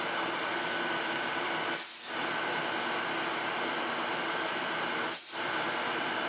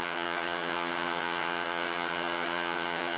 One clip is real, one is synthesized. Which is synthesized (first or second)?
second